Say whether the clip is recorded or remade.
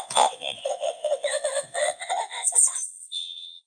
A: remade